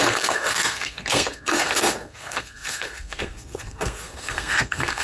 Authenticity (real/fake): fake